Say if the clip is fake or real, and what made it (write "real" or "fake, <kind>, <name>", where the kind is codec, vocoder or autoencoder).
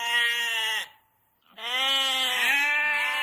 real